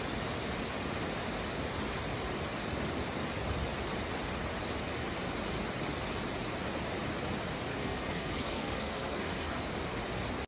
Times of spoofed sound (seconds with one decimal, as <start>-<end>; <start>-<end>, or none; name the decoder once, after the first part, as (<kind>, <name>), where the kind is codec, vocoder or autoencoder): 7.7-9.6 (codec, SNAC)